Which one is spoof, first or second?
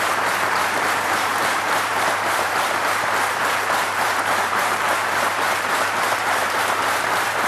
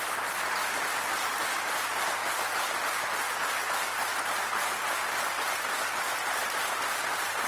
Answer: first